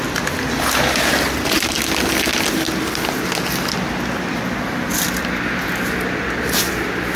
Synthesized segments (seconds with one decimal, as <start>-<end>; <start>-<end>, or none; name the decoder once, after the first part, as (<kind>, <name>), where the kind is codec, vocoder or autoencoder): none

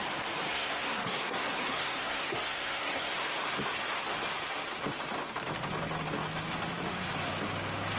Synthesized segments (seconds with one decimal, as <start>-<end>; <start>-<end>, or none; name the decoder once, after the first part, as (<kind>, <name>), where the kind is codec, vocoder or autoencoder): 0.5-3.1 (codec, SNAC)

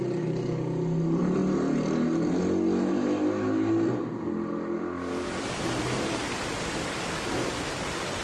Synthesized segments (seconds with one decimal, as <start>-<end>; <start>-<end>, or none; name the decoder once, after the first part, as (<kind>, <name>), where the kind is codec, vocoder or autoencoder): none

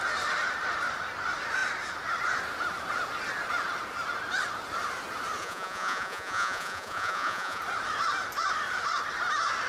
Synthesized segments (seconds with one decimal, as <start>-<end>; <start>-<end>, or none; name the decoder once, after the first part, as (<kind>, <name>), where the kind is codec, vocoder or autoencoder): 5.4-7.6 (vocoder, Vocos)

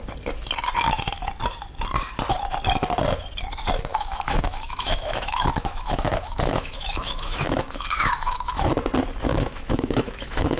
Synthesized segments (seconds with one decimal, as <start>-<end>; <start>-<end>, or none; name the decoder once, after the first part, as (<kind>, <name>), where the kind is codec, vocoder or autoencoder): 3.9-8.7 (autoencoder, DAC-VAE); 9.3-10.6